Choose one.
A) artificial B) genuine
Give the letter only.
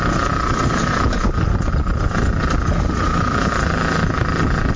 B